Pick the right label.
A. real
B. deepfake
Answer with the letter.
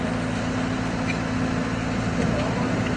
A